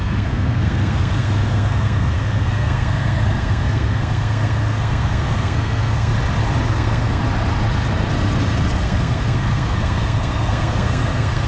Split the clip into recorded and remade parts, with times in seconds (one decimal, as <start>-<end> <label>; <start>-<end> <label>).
0.0-6.1 remade; 6.1-6.7 recorded; 6.7-7.2 remade; 7.2-8.7 recorded; 8.7-11.5 remade